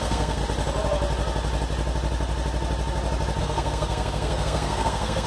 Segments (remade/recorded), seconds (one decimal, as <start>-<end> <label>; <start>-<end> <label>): 0.0-0.4 remade; 0.4-3.4 recorded; 3.4-5.3 remade